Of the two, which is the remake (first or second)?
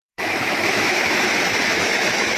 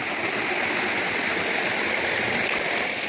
first